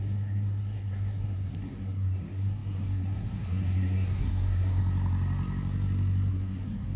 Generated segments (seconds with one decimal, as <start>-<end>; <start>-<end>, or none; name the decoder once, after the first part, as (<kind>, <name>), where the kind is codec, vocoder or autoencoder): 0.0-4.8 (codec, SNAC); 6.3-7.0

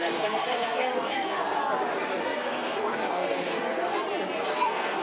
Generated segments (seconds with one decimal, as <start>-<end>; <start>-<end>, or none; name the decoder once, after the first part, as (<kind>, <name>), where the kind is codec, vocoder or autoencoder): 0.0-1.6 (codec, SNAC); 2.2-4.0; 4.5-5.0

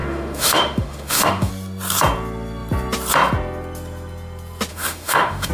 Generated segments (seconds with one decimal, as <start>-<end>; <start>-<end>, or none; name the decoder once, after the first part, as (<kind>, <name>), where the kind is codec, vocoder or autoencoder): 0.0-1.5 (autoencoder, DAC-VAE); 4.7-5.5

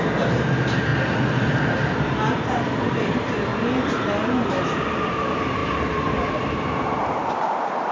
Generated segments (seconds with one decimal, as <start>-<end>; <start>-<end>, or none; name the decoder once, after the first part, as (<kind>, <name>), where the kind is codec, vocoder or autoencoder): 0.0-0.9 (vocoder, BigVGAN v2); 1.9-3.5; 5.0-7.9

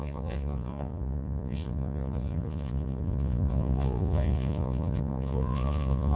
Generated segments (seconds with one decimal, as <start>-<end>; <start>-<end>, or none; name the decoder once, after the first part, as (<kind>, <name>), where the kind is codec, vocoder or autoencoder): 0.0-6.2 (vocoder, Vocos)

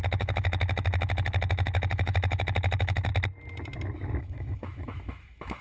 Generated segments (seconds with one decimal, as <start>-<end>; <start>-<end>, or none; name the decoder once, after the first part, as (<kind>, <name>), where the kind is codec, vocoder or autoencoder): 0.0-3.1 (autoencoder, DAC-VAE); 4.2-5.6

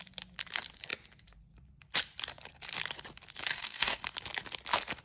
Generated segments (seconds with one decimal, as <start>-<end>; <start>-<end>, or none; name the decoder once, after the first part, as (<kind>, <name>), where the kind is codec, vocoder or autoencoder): 3.5-4.0 (codec, DAC)